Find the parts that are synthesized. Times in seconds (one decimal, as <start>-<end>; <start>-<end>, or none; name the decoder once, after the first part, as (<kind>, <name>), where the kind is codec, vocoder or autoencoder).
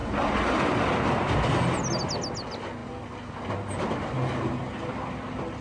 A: none